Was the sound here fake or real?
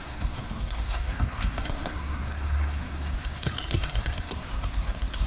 fake